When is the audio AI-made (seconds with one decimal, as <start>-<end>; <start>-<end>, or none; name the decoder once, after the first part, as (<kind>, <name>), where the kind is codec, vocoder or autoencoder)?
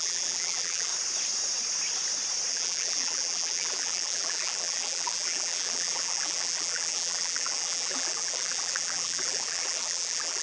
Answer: 0.0-0.9 (vocoder, BigVGAN v2); 2.5-10.4